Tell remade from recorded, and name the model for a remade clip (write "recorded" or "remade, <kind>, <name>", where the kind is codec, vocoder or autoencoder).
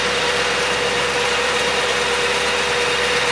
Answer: recorded